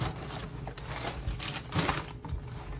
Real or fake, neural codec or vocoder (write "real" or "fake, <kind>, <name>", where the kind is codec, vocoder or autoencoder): real